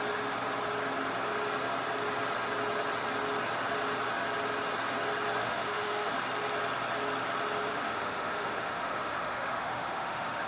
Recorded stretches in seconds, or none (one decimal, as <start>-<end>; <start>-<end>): 0.0-5.4; 6.1-7.7